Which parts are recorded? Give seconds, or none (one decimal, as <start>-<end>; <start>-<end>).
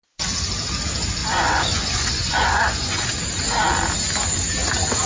0.0-1.2; 3.1-5.1